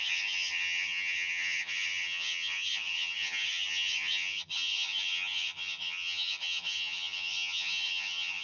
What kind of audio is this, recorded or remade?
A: remade